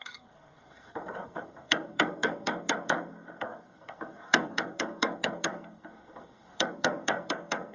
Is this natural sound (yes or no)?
no